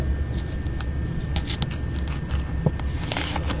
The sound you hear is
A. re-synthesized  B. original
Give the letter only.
B